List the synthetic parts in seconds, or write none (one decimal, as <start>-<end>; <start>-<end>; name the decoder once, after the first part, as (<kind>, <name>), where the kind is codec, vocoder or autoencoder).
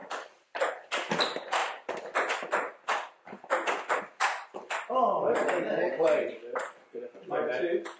none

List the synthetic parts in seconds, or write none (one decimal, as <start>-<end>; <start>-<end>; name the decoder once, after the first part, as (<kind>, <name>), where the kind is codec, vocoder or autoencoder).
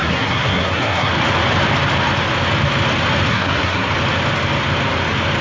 0.0-1.1 (codec, SNAC); 3.3-3.9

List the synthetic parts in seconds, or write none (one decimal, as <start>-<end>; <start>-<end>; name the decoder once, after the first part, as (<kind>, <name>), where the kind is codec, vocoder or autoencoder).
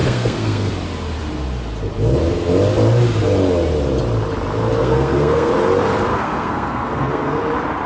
0.0-0.7 (codec, SNAC); 4.8-5.5; 6.1-7.4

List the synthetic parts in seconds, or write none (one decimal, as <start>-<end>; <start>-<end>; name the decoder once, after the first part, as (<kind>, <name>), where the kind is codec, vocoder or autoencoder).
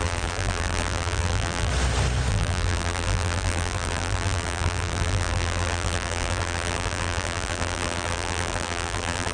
0.0-1.7 (vocoder, BigVGAN v2); 2.3-9.3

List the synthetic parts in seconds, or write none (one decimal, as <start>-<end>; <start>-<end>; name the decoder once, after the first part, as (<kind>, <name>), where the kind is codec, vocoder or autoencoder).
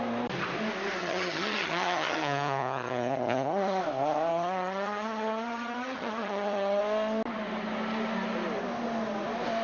1.0-3.8 (vocoder, HiFi-GAN); 4.3-6.8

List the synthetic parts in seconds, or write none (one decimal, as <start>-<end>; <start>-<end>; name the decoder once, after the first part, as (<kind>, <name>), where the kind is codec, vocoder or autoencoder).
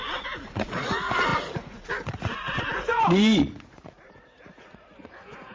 0.0-5.5 (vocoder, Vocos)